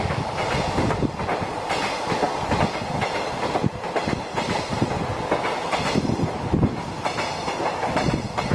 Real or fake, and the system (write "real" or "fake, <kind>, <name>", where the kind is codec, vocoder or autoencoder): real